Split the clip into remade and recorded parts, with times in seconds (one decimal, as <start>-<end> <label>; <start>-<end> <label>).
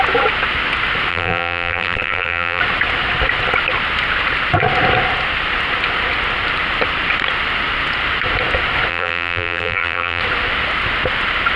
0.0-1.1 recorded; 1.1-2.6 remade; 2.6-8.9 recorded; 8.9-10.2 remade; 10.2-11.6 recorded